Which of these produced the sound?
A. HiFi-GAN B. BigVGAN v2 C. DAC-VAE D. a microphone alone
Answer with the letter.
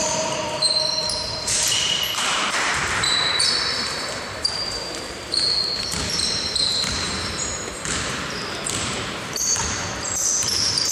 B